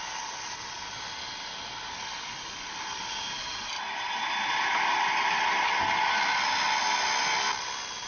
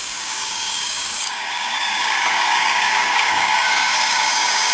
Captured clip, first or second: first